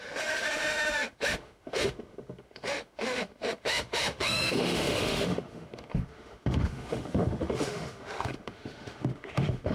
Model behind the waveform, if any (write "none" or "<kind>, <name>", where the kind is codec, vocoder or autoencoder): autoencoder, DAC-VAE